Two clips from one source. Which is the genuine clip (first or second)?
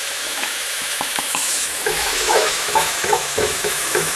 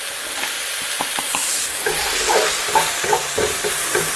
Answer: second